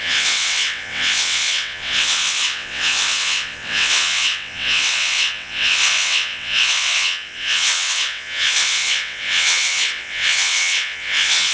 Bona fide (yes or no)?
no